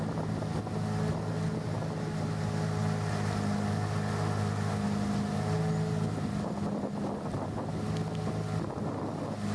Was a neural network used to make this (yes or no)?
no